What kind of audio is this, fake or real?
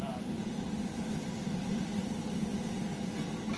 real